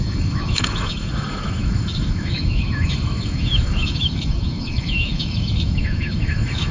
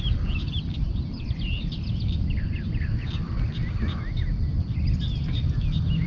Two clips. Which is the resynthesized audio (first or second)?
first